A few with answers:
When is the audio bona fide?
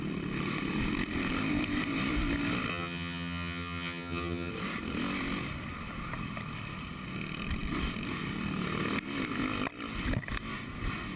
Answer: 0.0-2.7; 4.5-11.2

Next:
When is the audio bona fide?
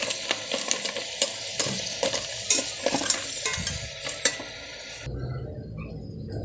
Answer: 0.0-1.5; 5.0-6.4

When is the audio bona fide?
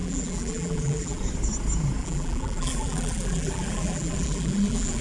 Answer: 1.2-2.0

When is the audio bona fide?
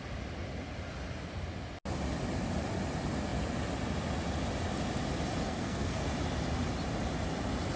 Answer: 0.0-5.4; 6.0-7.8